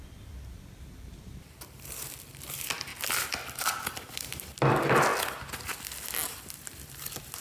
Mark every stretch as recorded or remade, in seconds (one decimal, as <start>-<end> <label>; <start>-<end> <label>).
0.0-2.9 remade; 2.9-4.1 recorded; 4.1-5.1 remade; 5.1-6.4 recorded; 6.4-7.4 remade